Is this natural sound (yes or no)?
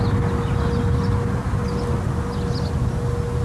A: yes